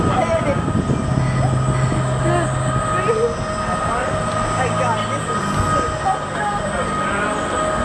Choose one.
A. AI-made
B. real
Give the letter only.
B